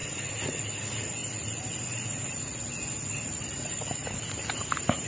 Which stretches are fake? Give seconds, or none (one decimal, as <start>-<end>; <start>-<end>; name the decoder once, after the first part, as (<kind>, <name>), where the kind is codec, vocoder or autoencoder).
none